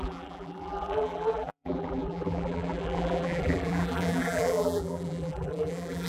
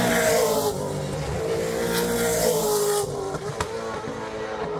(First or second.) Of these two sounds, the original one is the second